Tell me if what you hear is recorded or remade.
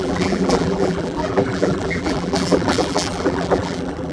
remade